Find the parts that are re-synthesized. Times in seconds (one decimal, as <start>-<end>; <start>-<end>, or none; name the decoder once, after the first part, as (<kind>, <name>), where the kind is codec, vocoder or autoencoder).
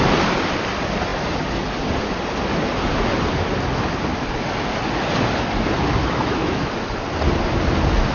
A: 6.0-6.7 (autoencoder, DAC-VAE)